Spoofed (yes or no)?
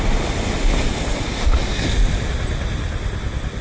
no